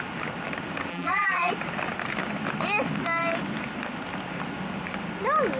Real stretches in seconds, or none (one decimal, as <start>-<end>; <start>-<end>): 0.0-0.9; 1.5-5.6